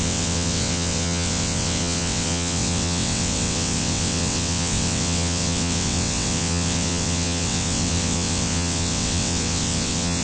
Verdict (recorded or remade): remade